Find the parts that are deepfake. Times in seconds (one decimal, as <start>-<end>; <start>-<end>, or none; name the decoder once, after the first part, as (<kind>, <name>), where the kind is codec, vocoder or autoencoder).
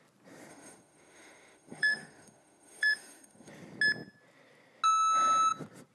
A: 0.5-3.5 (autoencoder, DAC-VAE)